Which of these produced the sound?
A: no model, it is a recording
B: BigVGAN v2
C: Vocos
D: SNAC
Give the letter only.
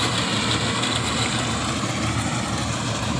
A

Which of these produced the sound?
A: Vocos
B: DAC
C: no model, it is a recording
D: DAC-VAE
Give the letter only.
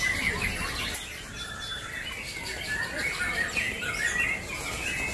C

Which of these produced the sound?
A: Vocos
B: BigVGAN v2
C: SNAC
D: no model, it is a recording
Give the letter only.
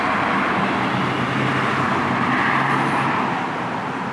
D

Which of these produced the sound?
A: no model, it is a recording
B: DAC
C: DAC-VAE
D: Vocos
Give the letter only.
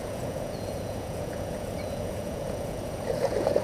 D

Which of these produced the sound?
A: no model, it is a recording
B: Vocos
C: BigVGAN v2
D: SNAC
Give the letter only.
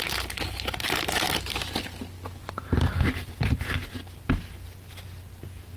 A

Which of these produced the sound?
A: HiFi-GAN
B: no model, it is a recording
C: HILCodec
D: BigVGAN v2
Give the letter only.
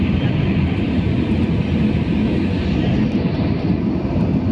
B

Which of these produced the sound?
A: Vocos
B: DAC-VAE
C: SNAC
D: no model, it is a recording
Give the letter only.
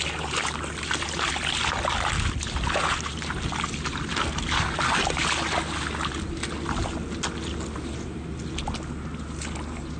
D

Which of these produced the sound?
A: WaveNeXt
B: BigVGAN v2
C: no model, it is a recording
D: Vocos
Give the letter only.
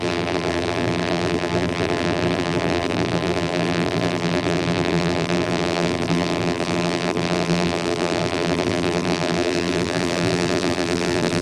B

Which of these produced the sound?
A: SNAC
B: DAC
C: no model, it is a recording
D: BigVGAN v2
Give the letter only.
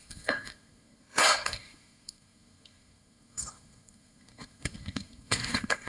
A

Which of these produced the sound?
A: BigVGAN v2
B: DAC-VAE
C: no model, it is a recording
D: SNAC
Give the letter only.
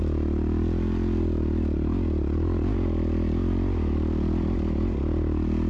C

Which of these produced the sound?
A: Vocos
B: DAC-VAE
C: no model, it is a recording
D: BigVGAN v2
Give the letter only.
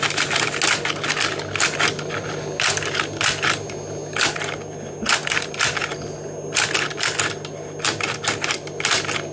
C